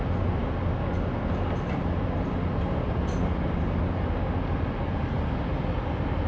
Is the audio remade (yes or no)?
no